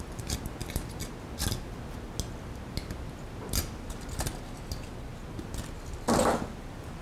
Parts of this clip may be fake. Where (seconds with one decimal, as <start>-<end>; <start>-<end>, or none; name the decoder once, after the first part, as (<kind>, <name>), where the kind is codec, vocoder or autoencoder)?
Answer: none